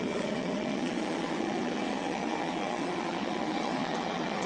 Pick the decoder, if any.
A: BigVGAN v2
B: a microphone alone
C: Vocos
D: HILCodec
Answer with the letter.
C